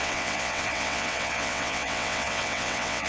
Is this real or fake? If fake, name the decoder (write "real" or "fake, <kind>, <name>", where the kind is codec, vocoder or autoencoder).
fake, vocoder, WaveNeXt